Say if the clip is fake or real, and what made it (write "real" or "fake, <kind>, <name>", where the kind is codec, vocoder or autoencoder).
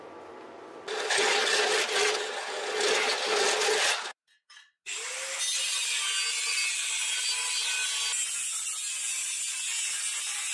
real